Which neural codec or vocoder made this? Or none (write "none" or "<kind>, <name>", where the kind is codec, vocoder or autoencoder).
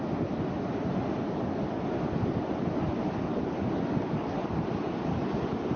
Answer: none